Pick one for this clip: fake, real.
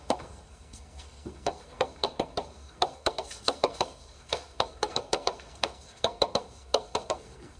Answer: fake